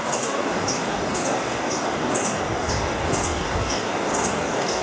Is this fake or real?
fake